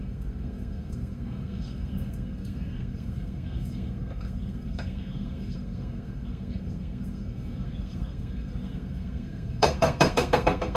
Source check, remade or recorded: remade